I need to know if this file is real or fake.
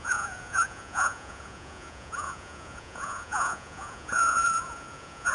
fake